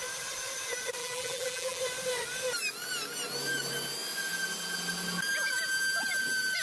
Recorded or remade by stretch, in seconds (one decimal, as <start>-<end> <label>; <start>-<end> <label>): 0.0-1.0 recorded; 1.0-1.8 remade; 1.8-6.6 recorded